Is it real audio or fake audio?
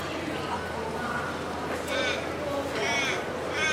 real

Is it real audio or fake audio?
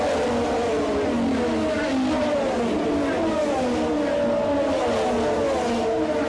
real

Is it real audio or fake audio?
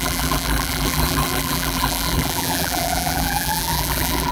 fake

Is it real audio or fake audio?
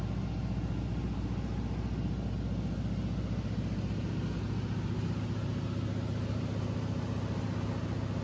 real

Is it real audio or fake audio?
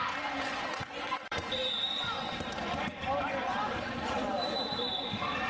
fake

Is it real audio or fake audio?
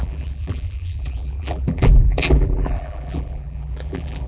fake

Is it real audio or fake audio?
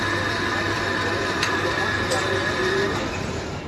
fake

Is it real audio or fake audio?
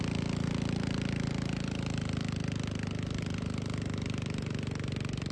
real